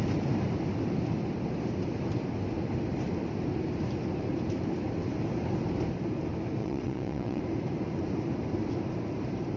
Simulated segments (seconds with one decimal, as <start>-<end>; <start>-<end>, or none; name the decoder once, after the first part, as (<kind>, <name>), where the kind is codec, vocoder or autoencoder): 6.6-7.4 (vocoder, WaveNeXt)